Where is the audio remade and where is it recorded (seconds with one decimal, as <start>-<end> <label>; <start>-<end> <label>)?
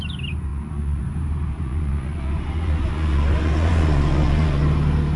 0.0-0.5 recorded; 0.5-1.0 remade; 1.0-1.5 recorded; 1.5-4.6 remade; 4.6-5.2 recorded